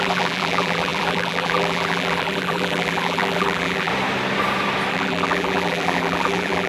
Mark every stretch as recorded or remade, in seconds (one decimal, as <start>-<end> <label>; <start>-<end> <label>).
0.0-3.9 remade; 3.9-4.9 recorded; 4.9-6.7 remade